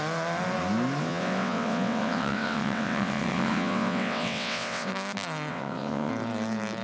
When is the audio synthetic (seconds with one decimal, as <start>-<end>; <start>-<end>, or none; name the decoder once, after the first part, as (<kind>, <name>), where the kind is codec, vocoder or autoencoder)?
1.0-4.9 (vocoder, WaveNeXt); 5.5-6.1